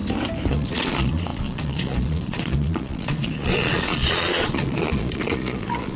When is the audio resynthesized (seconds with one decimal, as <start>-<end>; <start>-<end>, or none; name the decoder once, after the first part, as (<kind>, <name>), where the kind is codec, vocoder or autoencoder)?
0.5-6.0 (vocoder, Vocos)